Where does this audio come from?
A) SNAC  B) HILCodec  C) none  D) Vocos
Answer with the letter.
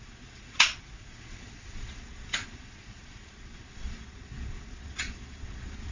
D